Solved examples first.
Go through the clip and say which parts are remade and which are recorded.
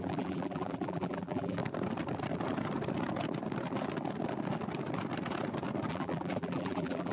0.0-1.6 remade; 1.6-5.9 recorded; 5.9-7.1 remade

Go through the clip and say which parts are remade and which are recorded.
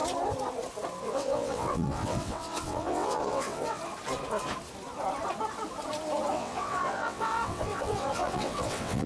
0.0-1.0 recorded; 1.0-3.8 remade; 3.8-6.3 recorded; 6.3-9.1 remade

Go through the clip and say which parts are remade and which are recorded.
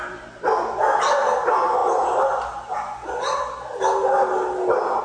0.0-5.0 recorded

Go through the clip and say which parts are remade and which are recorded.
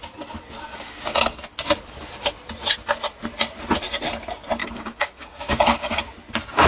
0.0-0.7 recorded; 0.7-1.3 remade; 1.3-4.6 recorded; 4.6-6.0 remade; 6.0-6.7 recorded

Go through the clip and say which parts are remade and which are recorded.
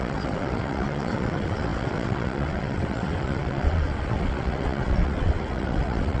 0.0-6.2 remade